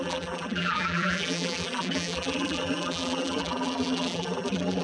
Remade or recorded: remade